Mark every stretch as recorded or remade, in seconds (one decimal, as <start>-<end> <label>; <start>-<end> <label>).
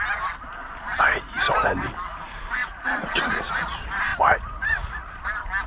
0.0-2.6 recorded; 2.6-3.5 remade; 3.5-4.1 recorded; 4.1-5.1 remade; 5.1-5.7 recorded